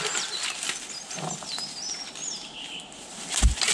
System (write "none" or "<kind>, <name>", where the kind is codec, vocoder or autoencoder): none